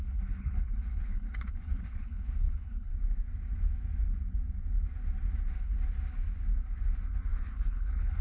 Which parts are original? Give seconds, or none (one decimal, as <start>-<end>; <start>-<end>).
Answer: 2.9-7.4